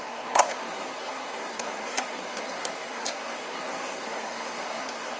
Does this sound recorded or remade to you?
remade